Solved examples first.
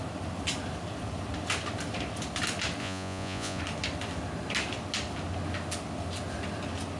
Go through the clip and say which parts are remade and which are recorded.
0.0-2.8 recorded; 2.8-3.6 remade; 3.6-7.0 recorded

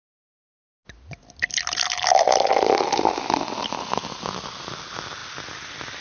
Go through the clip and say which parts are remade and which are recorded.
0.0-6.0 recorded

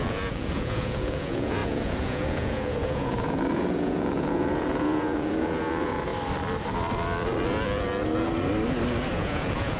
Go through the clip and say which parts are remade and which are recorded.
0.0-6.1 remade; 6.1-9.1 recorded; 9.1-9.8 remade

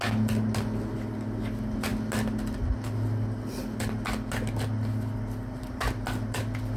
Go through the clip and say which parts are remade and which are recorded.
0.0-6.8 recorded